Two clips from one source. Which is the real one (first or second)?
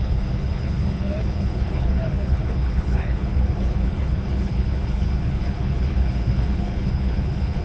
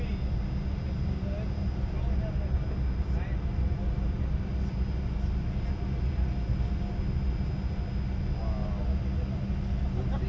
second